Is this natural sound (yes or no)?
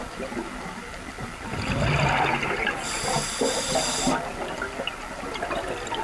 yes